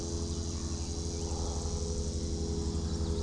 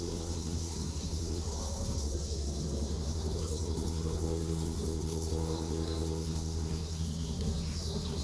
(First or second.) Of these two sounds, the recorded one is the first